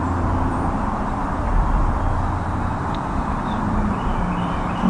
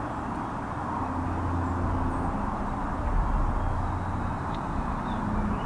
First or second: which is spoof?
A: first